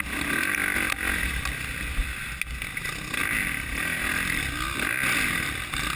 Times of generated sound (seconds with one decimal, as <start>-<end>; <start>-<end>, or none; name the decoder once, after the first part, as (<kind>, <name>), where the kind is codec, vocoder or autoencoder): none